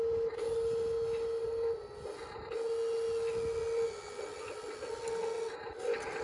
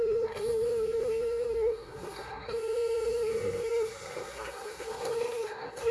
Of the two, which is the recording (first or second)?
first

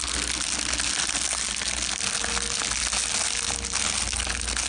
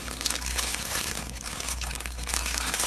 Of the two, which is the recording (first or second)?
first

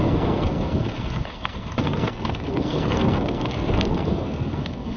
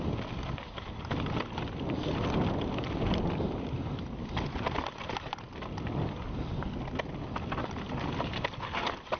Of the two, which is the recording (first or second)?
second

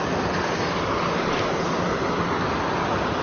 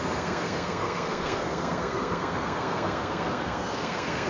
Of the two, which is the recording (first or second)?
first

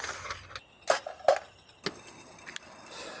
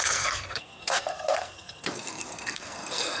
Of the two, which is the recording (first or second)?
first